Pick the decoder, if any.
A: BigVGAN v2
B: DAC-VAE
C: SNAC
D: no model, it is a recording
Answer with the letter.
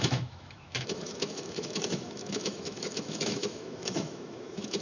B